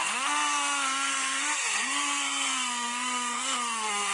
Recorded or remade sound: remade